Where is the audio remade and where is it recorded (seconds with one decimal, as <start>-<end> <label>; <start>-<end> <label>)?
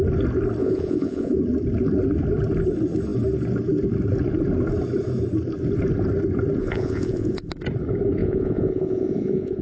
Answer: 0.0-0.6 recorded; 0.6-1.4 remade; 1.4-6.6 recorded; 6.6-7.5 remade; 7.5-8.2 recorded; 8.2-9.6 remade